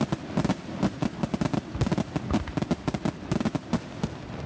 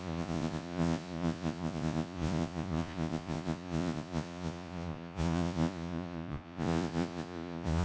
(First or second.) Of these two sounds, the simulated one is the second